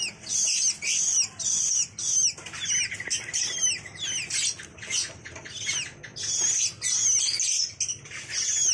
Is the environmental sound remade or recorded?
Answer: recorded